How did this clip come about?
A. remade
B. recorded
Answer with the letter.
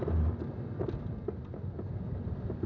B